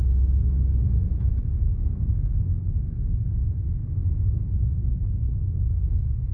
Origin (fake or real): fake